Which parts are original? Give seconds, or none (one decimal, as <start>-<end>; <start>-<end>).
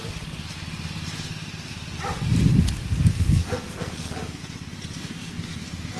0.0-3.1; 4.4-5.0